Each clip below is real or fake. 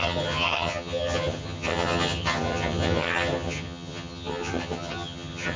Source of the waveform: fake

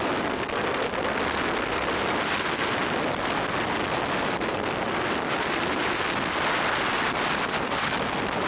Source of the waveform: real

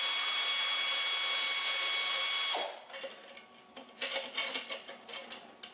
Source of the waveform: real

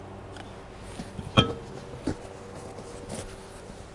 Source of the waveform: real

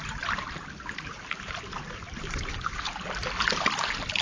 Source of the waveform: fake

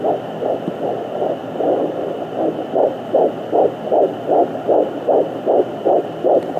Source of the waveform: real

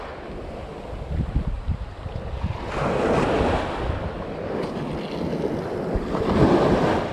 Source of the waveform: real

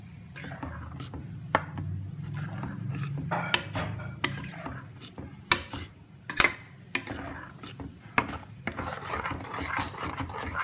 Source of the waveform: real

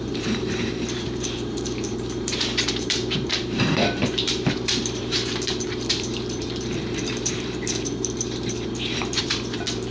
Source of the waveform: fake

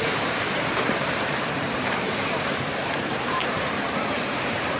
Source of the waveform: fake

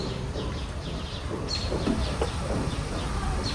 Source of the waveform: fake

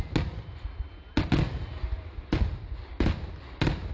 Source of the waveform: real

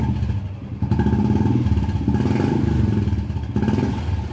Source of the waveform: real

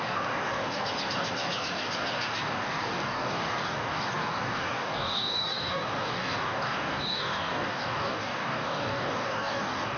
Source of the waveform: fake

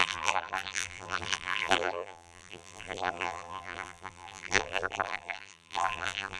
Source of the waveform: fake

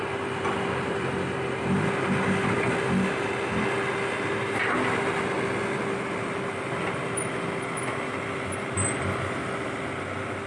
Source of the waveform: real